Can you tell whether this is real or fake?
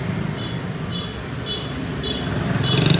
real